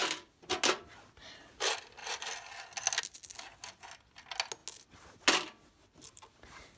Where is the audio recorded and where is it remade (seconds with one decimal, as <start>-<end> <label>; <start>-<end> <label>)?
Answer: 0.0-6.8 recorded